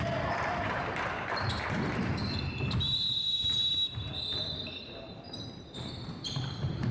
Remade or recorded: remade